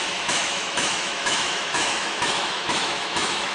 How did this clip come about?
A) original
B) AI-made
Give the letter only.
B